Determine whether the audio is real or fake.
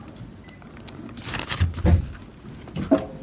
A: real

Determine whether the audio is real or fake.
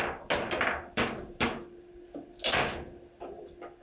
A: real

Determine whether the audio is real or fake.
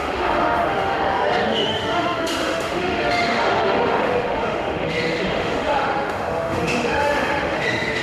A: fake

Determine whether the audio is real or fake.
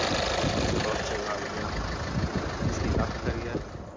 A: real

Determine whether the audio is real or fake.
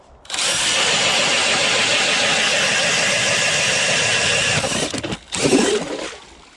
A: real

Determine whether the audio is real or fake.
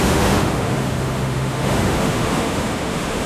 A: fake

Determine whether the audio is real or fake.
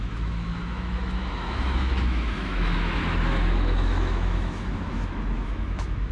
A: fake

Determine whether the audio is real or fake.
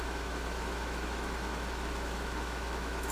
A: fake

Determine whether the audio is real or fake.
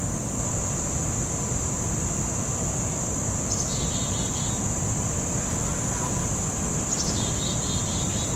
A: real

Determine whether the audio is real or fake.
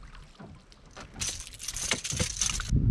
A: real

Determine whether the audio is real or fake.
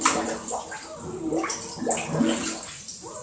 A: real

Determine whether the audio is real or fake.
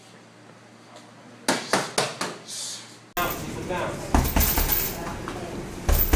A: real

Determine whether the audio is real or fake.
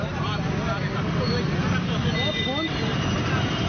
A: real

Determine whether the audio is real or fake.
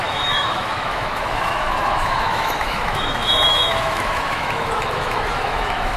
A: fake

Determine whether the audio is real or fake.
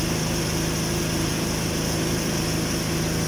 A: real